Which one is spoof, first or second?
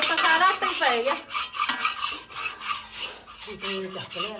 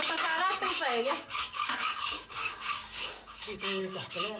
second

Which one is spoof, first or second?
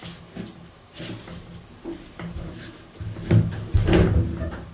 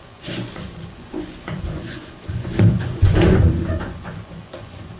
second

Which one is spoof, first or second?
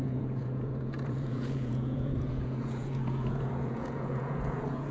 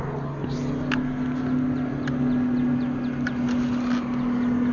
first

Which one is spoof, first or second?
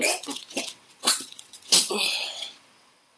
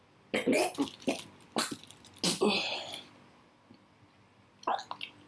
first